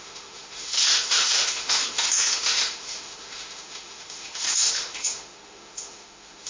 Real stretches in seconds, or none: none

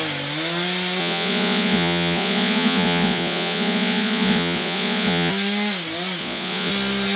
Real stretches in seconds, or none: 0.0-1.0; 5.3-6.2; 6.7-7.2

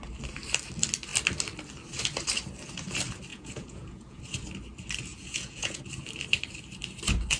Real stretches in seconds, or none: 0.0-3.3; 4.2-5.1; 5.8-7.4

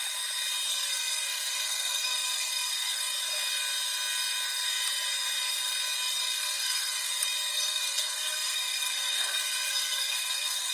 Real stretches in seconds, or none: 0.0-0.7; 3.1-6.2; 7.1-7.5